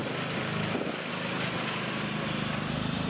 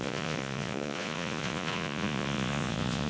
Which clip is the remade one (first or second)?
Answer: second